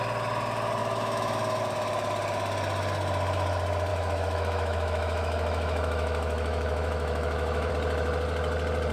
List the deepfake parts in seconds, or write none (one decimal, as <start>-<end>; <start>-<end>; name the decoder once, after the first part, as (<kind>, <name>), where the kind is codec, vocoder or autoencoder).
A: 0.8-1.6 (autoencoder, DAC-VAE); 3.9-7.7